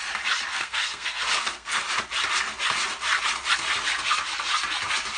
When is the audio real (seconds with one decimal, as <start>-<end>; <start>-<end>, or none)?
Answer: 0.0-0.5; 1.8-5.2